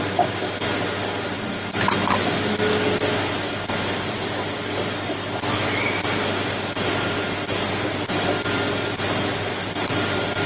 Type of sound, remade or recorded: recorded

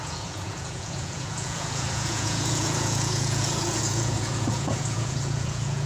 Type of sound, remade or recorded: remade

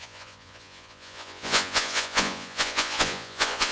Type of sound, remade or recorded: remade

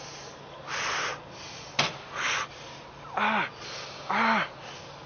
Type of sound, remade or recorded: recorded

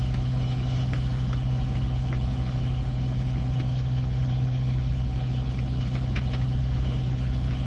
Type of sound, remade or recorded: remade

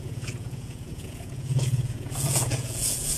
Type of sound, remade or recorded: remade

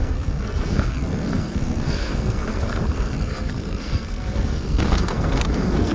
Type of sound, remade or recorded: remade